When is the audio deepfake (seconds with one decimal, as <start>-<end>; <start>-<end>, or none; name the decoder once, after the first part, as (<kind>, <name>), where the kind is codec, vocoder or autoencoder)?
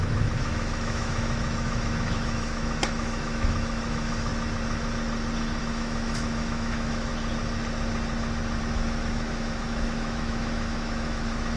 0.0-4.3 (autoencoder, DAC-VAE); 5.6-7.1; 8.6-11.6